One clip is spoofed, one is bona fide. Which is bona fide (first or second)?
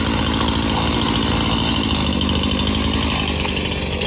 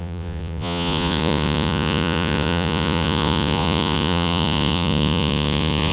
first